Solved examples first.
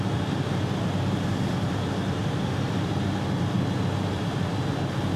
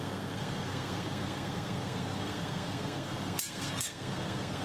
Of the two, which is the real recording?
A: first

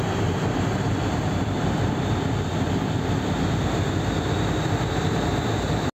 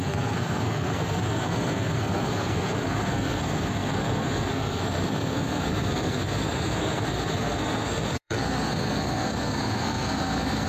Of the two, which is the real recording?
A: first